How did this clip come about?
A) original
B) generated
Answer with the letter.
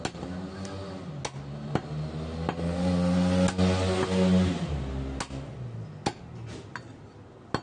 A